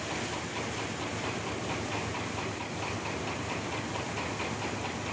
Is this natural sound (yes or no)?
yes